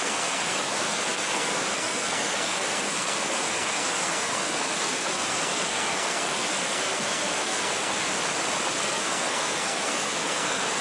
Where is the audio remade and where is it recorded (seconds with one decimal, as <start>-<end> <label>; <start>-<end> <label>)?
0.0-8.1 remade; 8.1-8.8 recorded; 8.8-10.8 remade